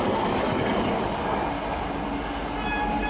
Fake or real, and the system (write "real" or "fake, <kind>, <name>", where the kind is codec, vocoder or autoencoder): real